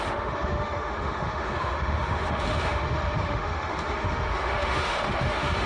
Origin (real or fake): fake